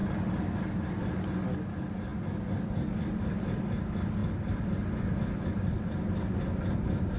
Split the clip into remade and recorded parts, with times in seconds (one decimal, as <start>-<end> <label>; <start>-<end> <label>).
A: 0.0-7.2 recorded